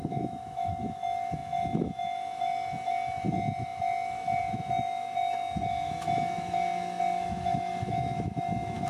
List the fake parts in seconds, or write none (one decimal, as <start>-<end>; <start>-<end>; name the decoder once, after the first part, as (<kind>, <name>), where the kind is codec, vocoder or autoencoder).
0.0-8.9 (autoencoder, DAC-VAE)